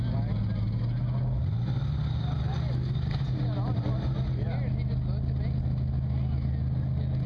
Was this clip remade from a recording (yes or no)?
no